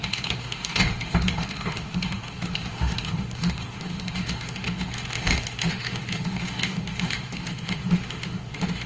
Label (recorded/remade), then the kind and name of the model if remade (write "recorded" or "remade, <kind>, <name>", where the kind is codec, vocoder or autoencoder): remade, autoencoder, DAC-VAE